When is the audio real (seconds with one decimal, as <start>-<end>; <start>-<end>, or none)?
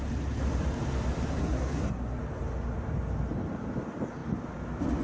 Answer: 0.0-1.4; 2.2-5.0